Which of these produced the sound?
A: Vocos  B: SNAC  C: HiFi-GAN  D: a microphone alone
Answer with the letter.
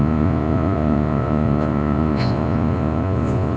A